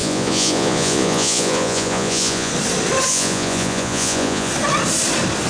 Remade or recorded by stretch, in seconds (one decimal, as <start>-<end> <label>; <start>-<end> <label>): 0.0-2.5 remade; 2.5-3.1 recorded; 3.1-4.5 remade; 4.5-5.5 recorded